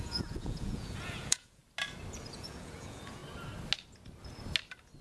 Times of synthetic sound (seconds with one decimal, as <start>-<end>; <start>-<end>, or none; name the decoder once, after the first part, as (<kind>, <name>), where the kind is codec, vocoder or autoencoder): 0.0-1.6 (vocoder, Vocos); 2.3-3.2